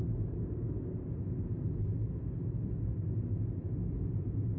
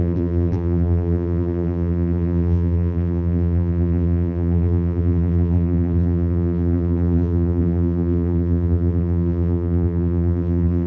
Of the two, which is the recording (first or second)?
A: first